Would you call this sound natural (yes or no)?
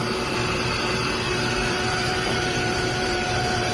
no